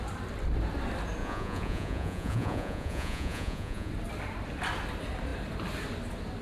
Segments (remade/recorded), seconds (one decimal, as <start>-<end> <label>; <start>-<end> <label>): 0.0-1.2 recorded; 1.2-3.9 remade; 3.9-6.4 recorded